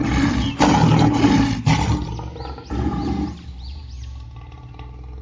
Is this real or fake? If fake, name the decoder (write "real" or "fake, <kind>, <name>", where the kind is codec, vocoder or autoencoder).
real